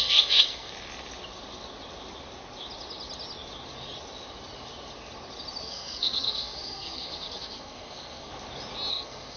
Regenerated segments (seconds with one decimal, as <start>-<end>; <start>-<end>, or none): 0.0-0.7; 5.6-8.3; 8.9-9.4